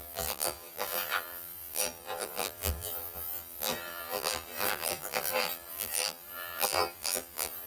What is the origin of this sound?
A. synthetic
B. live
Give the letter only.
A